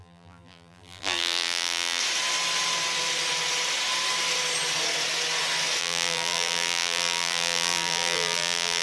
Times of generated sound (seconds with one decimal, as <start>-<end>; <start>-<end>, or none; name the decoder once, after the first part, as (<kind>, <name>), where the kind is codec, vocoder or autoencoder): 0.0-2.0 (vocoder, BigVGAN v2); 5.8-8.8